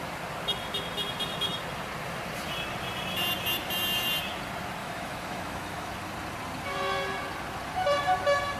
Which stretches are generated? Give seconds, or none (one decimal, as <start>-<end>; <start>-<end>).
4.8-5.9